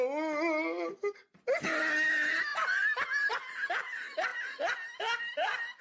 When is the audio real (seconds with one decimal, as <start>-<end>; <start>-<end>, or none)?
0.0-5.8